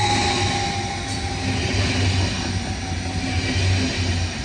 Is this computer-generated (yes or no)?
no